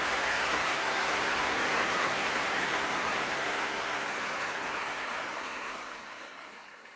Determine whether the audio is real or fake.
fake